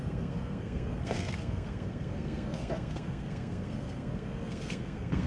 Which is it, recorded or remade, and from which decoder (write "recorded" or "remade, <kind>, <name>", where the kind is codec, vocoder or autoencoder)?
remade, codec, SNAC